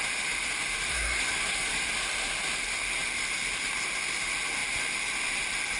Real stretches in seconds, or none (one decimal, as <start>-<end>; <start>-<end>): 0.0-0.9; 1.8-5.8